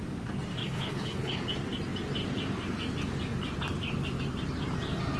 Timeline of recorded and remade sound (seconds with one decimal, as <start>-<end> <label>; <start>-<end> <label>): 0.0-0.6 recorded; 0.6-1.4 remade; 1.4-5.2 recorded